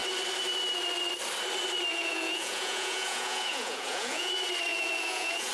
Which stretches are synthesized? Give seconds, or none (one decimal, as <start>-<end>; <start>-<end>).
1.9-4.3; 4.7-5.5